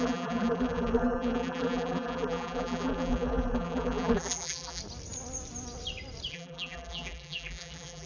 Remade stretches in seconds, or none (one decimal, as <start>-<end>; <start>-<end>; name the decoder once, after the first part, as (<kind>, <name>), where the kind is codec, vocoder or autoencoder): 0.0-4.8 (vocoder, BigVGAN v2); 6.3-8.1

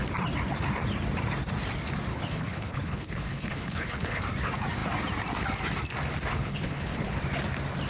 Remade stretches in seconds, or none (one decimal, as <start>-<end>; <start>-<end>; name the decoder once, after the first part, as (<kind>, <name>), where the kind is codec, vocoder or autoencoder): 2.1-4.2 (codec, HILCodec); 6.3-7.2

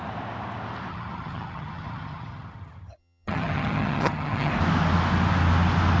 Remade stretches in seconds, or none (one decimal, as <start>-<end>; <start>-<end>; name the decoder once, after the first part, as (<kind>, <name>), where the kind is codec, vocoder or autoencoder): 0.9-4.5 (vocoder, HiFi-GAN)

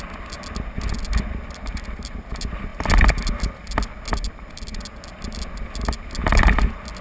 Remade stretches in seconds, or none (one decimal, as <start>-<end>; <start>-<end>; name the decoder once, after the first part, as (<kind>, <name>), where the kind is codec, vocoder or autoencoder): none

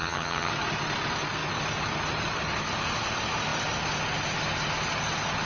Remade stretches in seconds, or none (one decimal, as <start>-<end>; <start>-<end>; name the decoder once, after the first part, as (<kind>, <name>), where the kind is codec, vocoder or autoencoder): 0.0-0.5 (vocoder, HiFi-GAN)